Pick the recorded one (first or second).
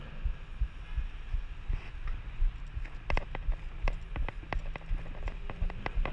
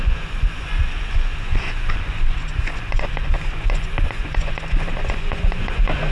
first